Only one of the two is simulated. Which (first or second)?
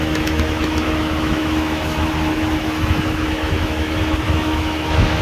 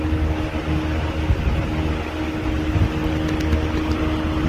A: first